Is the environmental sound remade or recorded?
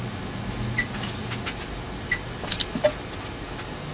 recorded